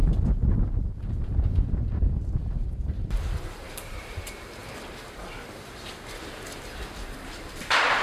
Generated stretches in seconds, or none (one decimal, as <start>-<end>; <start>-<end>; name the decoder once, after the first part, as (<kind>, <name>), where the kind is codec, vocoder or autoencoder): 0.0-8.0 (vocoder, BigVGAN v2)